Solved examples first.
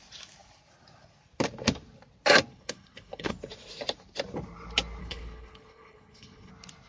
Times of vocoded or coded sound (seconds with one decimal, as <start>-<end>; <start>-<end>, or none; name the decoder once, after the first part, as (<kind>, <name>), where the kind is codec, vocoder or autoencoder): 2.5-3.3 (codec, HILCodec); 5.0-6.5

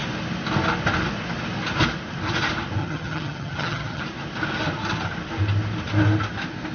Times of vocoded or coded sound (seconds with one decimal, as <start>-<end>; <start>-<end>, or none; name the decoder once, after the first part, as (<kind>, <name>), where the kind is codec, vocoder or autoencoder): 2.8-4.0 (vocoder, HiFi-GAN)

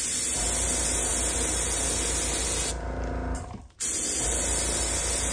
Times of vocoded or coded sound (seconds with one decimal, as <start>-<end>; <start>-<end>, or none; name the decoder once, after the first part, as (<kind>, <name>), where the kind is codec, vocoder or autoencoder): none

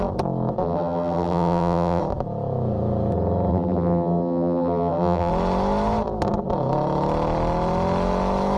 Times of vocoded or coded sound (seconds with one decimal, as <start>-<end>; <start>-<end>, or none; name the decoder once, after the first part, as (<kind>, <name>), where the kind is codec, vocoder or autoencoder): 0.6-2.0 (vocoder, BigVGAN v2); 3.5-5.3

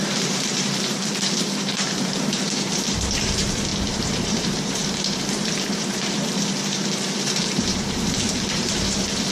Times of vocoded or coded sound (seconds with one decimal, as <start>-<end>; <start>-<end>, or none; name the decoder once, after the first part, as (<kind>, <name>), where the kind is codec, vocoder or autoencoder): 0.0-9.3 (vocoder, BigVGAN v2)

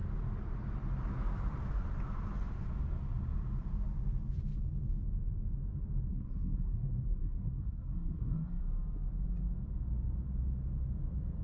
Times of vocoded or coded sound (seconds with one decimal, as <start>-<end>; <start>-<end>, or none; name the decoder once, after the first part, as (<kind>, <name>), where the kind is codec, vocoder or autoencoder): 6.1-8.6 (codec, SNAC)

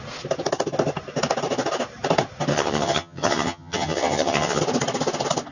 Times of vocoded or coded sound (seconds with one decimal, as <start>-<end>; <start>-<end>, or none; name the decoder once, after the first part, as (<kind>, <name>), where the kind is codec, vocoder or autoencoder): 2.5-4.6 (vocoder, HiFi-GAN)

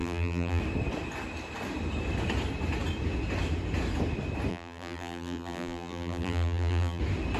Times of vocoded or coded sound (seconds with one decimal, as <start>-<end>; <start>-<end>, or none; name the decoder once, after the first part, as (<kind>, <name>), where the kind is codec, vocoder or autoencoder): 0.0-0.6 (vocoder, BigVGAN v2); 4.5-7.0